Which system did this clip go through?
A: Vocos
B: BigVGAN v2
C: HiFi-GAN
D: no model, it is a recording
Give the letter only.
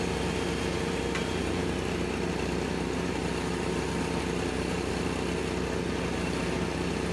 D